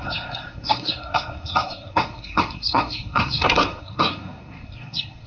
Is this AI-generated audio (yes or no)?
yes